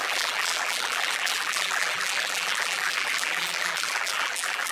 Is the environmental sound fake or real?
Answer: fake